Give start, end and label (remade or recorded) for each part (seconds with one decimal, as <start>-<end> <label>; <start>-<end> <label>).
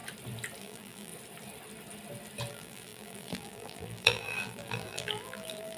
0.0-0.6 recorded; 0.6-1.1 remade; 1.1-2.5 recorded; 2.5-5.8 remade